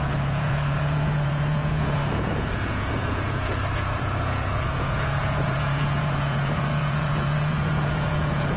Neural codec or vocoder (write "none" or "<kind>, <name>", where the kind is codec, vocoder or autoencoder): vocoder, Vocos